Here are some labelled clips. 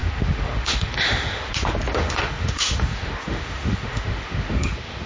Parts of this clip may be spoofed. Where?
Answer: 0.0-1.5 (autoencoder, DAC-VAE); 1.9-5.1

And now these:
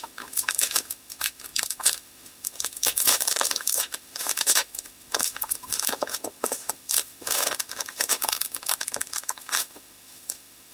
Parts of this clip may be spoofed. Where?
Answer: 0.0-10.7 (autoencoder, DAC-VAE)

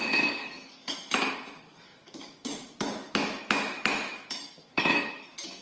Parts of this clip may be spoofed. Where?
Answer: 0.0-5.6 (autoencoder, DAC-VAE)